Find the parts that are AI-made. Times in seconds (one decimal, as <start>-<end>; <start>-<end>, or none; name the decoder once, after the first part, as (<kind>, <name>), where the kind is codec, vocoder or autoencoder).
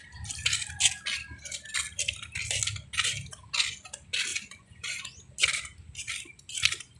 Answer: 4.3-5.0 (vocoder, Vocos)